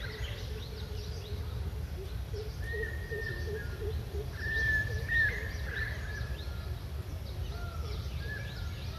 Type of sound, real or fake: real